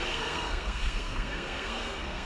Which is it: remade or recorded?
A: remade